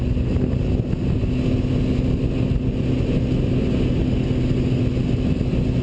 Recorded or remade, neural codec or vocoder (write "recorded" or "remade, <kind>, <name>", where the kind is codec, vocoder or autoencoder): recorded